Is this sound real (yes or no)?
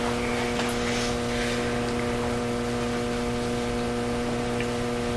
no